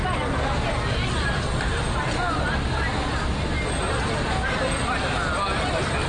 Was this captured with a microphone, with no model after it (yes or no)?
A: yes